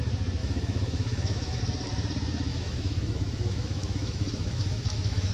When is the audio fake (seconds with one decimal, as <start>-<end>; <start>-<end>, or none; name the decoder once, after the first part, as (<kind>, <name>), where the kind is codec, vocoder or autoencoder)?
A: 0.4-1.6 (autoencoder, DAC-VAE); 2.5-5.3